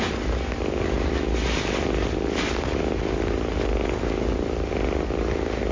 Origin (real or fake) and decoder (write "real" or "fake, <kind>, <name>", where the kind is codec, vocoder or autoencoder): real